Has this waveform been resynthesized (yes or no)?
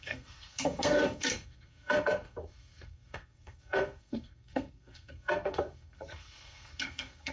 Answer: yes